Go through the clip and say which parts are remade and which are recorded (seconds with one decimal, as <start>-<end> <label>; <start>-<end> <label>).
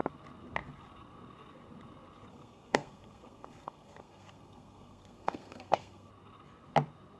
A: 0.0-2.3 recorded; 2.3-6.1 remade; 6.1-7.2 recorded